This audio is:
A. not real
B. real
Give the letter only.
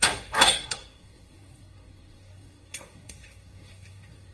A